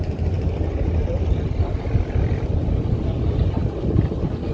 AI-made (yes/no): no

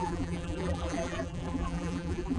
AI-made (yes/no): yes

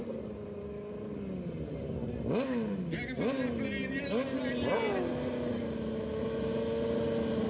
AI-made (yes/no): no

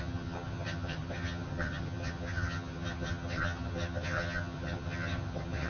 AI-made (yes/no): yes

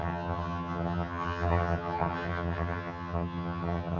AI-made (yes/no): yes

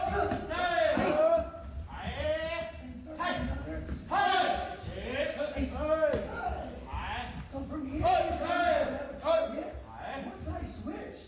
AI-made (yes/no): no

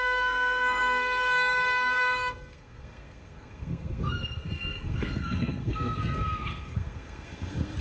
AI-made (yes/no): yes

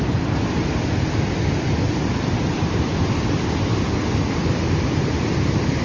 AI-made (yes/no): no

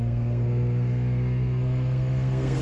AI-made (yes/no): yes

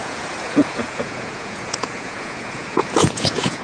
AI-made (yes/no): yes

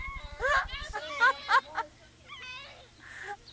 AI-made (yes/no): yes